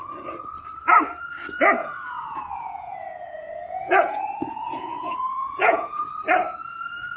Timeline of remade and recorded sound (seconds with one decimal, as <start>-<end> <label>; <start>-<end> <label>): 0.0-1.8 recorded; 1.8-6.1 remade; 6.1-7.2 recorded